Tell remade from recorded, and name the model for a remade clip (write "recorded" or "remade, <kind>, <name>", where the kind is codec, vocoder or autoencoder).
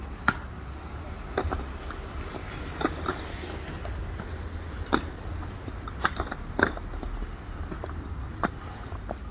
recorded